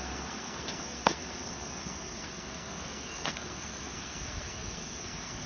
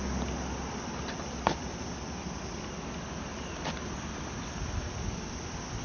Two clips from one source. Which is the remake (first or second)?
first